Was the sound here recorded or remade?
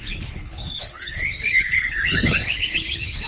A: remade